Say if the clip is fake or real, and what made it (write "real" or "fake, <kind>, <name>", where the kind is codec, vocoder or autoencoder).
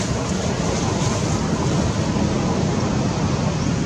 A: real